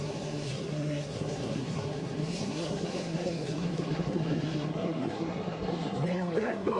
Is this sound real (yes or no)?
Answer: no